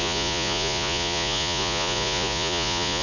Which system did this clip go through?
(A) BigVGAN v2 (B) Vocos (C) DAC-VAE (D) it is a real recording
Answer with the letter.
B